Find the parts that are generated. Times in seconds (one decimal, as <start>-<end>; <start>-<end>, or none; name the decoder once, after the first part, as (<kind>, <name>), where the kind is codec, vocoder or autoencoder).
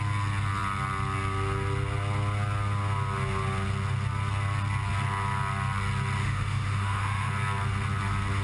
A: 6.2-7.3 (autoencoder, DAC-VAE)